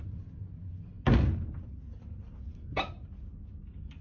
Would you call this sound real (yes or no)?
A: yes